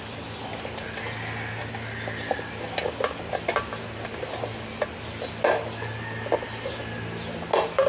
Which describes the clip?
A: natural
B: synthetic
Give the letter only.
A